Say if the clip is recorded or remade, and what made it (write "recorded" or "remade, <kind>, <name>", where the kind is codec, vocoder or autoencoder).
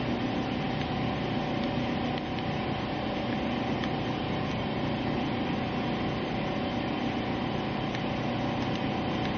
recorded